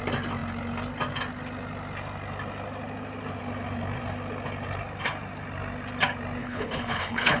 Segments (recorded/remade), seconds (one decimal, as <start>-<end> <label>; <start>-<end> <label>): 0.0-6.4 recorded; 6.4-7.4 remade